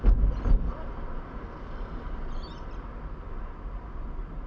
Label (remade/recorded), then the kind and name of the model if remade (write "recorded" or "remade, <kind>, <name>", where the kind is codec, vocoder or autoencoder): recorded